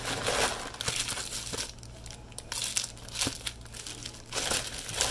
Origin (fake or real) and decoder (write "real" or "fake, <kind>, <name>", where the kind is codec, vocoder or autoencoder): real